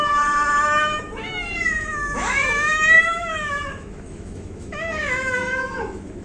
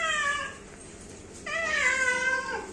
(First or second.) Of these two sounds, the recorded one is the second